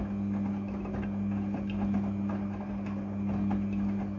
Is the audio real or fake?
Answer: real